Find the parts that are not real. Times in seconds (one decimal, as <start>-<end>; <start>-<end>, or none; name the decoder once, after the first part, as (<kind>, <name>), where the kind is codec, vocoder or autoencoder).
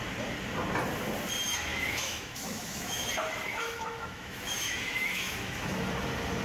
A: 1.7-3.1 (autoencoder, DAC-VAE); 3.5-5.9